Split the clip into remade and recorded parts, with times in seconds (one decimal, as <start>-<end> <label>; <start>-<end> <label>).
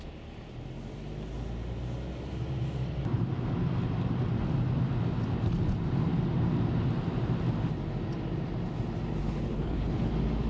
0.0-9.2 recorded; 9.2-10.1 remade; 10.1-10.5 recorded